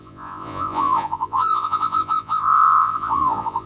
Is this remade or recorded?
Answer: remade